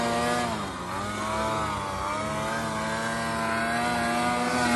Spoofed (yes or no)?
no